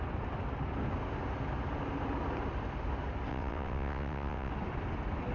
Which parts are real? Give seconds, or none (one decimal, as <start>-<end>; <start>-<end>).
0.0-3.3; 4.5-5.3